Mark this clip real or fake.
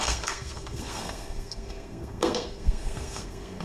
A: fake